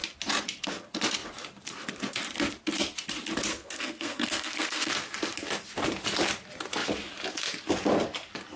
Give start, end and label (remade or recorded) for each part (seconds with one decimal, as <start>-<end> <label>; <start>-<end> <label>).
0.0-3.5 recorded; 3.5-4.9 remade; 4.9-8.6 recorded